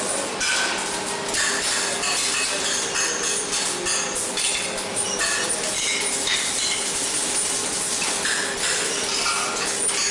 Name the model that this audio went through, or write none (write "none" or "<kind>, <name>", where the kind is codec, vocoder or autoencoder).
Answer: none